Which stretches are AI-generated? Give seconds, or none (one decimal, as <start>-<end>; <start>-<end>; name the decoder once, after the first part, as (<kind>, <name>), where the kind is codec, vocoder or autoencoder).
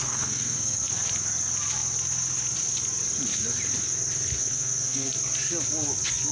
0.0-0.9 (codec, SNAC); 4.4-5.1